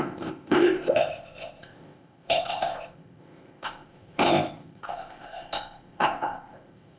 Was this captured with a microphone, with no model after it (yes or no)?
no